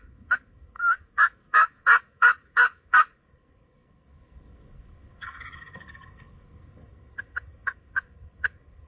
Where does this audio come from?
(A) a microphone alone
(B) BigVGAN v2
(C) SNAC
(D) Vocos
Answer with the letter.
C